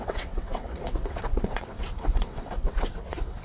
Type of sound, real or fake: fake